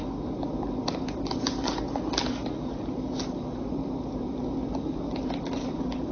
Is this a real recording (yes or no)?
yes